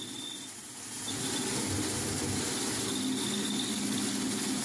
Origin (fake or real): real